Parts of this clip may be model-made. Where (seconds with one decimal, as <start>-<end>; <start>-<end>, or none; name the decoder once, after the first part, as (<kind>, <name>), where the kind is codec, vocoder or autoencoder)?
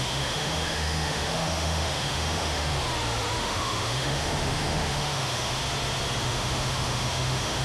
0.0-2.7 (autoencoder, DAC-VAE); 3.4-5.6; 6.2-7.6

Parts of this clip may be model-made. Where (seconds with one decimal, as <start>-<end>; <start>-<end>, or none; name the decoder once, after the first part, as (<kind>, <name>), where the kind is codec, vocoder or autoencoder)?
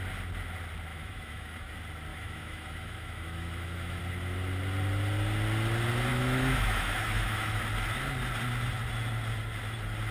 0.9-1.7 (autoencoder, DAC-VAE); 2.1-4.0; 6.1-7.6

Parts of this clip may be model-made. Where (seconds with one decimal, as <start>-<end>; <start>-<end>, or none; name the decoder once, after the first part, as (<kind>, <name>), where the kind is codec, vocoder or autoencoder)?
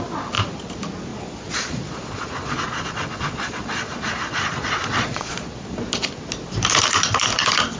1.1-5.8 (vocoder, Vocos)